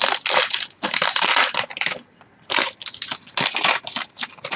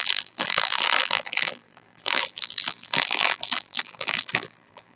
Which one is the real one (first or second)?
first